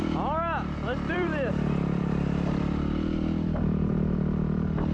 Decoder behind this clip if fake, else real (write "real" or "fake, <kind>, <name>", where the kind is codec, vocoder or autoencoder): fake, vocoder, BigVGAN v2